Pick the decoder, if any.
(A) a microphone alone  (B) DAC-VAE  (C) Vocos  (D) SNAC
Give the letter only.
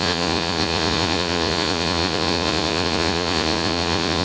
C